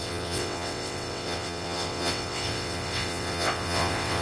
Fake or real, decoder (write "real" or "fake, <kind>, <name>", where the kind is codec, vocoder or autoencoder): fake, vocoder, WaveNeXt